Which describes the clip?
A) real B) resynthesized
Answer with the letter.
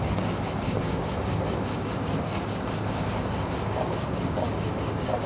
B